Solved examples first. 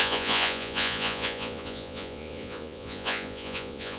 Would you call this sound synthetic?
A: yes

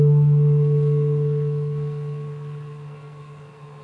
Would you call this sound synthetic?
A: yes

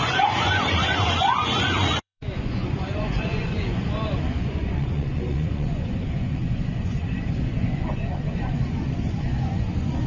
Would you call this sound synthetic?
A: yes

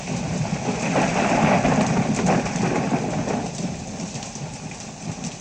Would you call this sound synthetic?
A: no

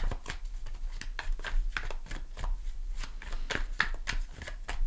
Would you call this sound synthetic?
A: no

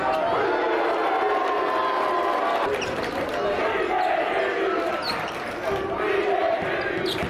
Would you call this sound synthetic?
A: no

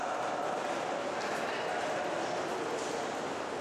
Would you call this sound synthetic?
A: no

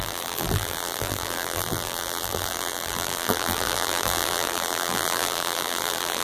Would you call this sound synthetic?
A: yes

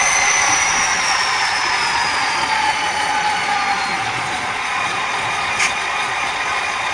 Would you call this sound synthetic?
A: yes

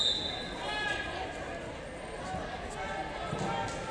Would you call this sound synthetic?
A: no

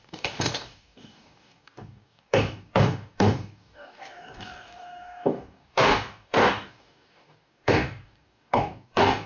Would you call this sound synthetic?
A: yes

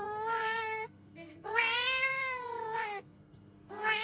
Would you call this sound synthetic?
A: yes